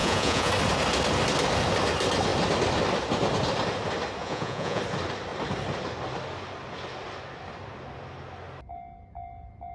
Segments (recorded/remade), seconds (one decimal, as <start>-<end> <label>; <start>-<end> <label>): 0.0-0.5 remade; 0.5-4.2 recorded; 4.2-4.8 remade; 4.8-9.7 recorded